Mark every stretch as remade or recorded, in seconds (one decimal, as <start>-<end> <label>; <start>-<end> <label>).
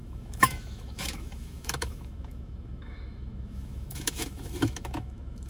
0.0-5.5 remade